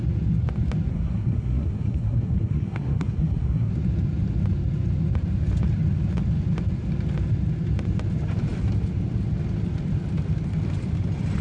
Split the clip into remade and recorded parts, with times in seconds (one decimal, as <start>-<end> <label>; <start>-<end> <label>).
0.0-0.9 recorded; 0.9-3.7 remade; 3.7-11.4 recorded